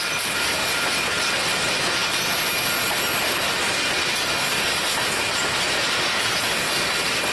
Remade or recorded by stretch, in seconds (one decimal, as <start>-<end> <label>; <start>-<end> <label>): 0.0-7.3 recorded

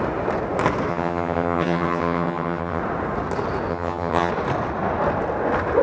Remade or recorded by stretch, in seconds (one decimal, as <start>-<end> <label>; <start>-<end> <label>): 0.0-0.9 recorded; 0.9-2.8 remade; 2.8-3.7 recorded; 3.7-4.3 remade; 4.3-5.8 recorded

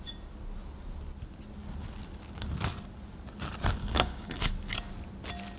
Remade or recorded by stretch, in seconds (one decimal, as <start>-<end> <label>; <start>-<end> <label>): 0.0-3.8 recorded; 3.8-4.5 remade; 4.5-5.6 recorded

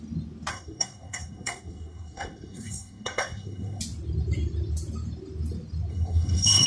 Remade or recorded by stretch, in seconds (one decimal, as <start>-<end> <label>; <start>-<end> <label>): 0.0-0.5 recorded; 0.5-3.8 remade; 3.8-5.9 recorded; 5.9-6.7 remade